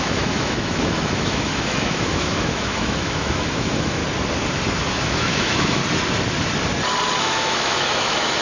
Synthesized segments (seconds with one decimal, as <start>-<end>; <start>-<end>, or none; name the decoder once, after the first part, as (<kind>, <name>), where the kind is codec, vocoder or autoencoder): 0.0-4.0 (autoencoder, DAC-VAE); 4.9-5.8; 7.2-8.4